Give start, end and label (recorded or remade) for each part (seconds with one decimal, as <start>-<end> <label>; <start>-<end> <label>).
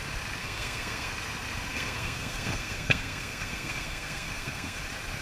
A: 0.0-0.4 recorded; 0.4-1.1 remade; 1.1-1.7 recorded; 1.7-4.8 remade; 4.8-5.2 recorded